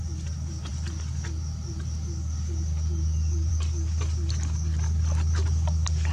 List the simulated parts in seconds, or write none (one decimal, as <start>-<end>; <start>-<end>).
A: none